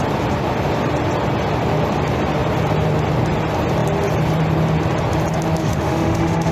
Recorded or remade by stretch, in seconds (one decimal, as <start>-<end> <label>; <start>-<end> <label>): 0.0-5.6 recorded; 5.6-6.5 remade